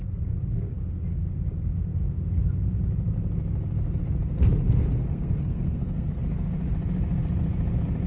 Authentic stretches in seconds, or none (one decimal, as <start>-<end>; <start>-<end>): 0.0-4.9; 6.2-8.1